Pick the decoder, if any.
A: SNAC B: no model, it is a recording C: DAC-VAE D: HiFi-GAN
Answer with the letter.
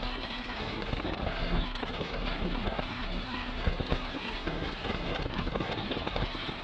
A